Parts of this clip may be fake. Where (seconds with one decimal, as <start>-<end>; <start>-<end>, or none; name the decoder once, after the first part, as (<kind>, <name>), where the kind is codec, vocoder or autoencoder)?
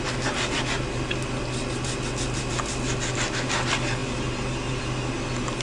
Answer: none